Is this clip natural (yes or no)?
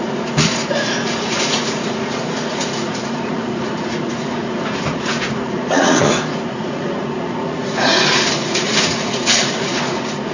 no